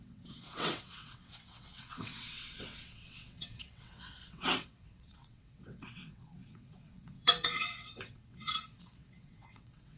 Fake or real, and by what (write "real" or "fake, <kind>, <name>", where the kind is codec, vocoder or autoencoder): fake, vocoder, WaveNeXt